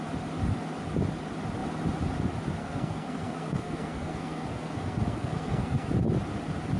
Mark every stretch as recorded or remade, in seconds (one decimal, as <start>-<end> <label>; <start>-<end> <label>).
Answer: 0.0-2.6 recorded; 2.6-5.9 remade; 5.9-6.8 recorded